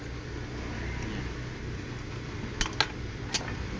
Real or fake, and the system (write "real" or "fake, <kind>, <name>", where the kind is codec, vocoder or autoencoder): real